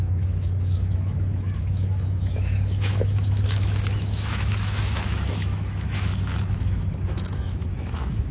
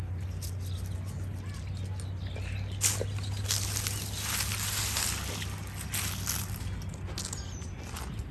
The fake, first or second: first